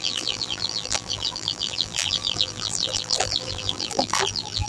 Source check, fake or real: fake